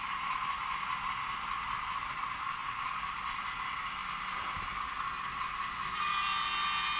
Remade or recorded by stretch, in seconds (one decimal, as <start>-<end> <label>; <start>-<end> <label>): 0.0-7.0 recorded